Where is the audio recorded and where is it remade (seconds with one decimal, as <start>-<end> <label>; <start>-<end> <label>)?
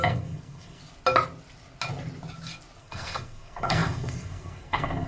0.0-0.8 remade; 0.8-2.8 recorded; 2.8-5.1 remade